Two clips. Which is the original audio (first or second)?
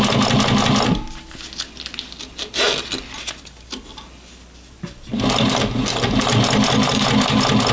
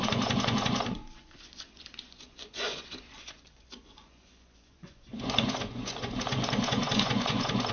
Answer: first